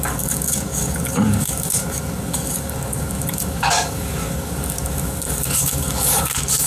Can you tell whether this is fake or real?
fake